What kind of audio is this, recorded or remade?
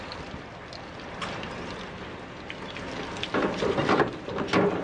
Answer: recorded